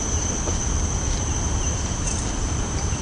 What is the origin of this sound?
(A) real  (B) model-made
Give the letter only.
B